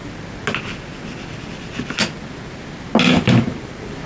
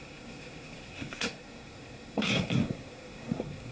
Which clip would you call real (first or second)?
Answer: first